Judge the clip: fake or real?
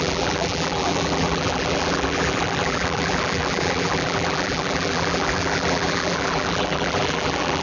fake